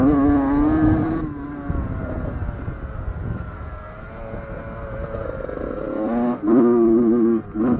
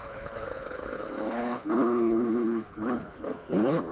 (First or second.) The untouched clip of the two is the first